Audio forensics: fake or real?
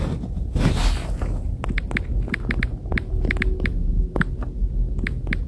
real